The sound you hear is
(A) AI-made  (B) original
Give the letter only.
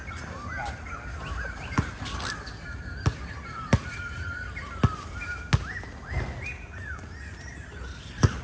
B